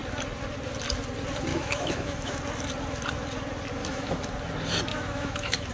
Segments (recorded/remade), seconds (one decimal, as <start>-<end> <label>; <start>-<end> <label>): 0.0-1.5 recorded; 1.5-2.4 remade; 2.4-3.8 recorded; 3.8-4.3 remade; 4.3-4.9 recorded; 4.9-5.7 remade